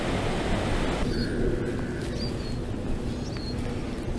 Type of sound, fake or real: real